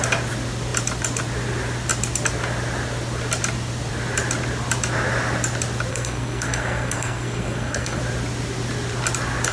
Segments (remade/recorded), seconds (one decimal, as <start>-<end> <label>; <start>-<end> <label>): 0.0-5.9 recorded; 5.9-8.0 remade; 8.0-9.5 recorded